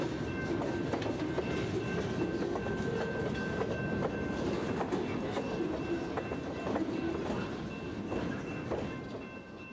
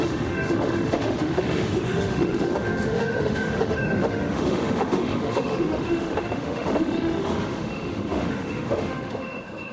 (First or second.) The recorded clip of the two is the first